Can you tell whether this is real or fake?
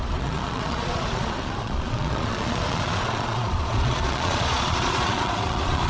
fake